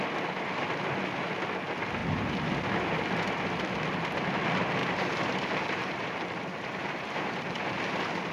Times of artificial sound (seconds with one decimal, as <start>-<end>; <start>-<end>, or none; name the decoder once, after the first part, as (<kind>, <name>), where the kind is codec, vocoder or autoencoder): 4.8-7.8 (vocoder, BigVGAN v2)